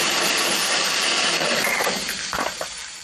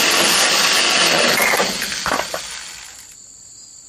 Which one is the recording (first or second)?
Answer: second